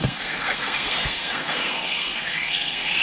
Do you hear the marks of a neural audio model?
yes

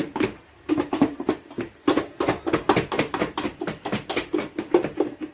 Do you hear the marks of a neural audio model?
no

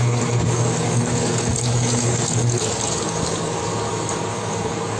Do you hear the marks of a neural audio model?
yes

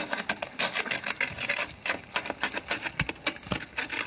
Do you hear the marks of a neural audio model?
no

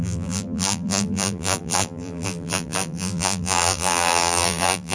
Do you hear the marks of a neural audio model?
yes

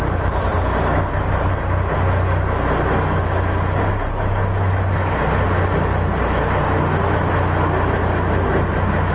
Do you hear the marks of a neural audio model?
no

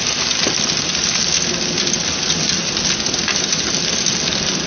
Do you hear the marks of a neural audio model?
no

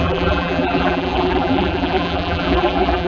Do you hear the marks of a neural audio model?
yes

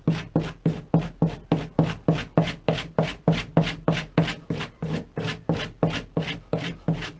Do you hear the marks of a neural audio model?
no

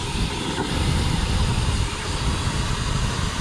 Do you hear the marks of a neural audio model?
no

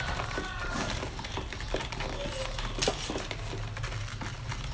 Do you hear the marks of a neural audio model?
no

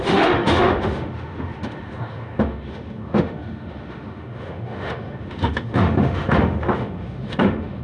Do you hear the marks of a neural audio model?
yes